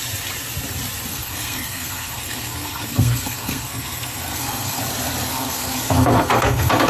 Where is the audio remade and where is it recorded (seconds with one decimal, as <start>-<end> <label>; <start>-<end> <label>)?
0.0-1.1 recorded; 1.1-4.8 remade; 4.8-5.3 recorded; 5.3-6.9 remade